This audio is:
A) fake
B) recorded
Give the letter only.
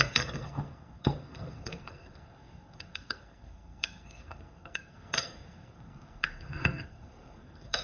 A